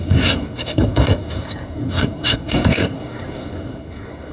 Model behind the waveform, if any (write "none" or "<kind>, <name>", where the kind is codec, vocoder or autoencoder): codec, SNAC